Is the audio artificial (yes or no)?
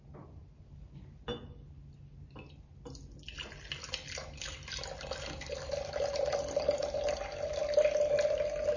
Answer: no